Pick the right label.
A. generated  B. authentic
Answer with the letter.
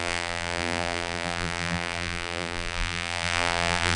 A